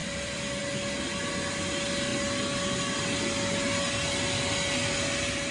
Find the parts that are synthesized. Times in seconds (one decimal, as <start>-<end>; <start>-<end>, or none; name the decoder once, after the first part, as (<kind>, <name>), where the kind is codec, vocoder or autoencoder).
0.0-0.6 (vocoder, BigVGAN v2)

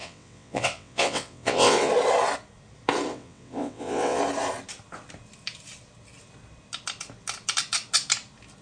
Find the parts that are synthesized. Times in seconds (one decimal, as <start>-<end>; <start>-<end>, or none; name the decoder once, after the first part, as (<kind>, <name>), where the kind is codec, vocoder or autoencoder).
0.0-1.9 (vocoder, WaveNeXt); 3.1-4.2

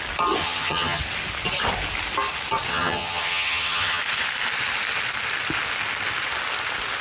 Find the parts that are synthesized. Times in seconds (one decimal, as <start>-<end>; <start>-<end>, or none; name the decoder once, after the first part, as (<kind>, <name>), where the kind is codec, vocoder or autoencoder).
0.4-1.0 (vocoder, HiFi-GAN); 2.7-4.0

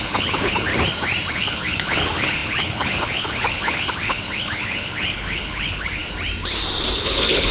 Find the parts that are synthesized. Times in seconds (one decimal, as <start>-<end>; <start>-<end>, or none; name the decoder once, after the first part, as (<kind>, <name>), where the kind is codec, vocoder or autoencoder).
0.0-0.7 (codec, HILCodec); 1.3-6.0; 7.0-7.5

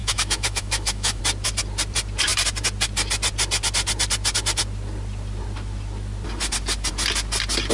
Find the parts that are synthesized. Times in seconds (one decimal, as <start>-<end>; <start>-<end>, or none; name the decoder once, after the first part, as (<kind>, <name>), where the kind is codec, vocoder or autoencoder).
0.0-1.2 (autoencoder, DAC-VAE)

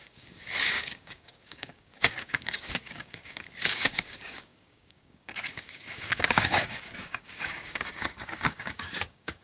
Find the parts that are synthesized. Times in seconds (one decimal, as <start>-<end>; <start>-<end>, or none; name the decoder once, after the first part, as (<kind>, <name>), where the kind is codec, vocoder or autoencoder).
0.0-9.4 (codec, DAC)

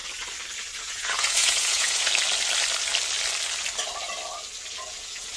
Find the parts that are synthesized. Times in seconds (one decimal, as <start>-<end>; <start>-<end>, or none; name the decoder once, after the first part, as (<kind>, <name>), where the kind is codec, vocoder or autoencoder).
0.7-2.1 (vocoder, Vocos); 4.9-5.4

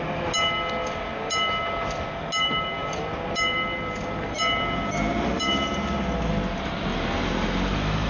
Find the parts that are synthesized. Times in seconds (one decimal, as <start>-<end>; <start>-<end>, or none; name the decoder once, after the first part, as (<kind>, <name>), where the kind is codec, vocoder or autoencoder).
none